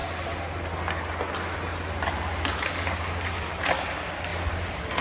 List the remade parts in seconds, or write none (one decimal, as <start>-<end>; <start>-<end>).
none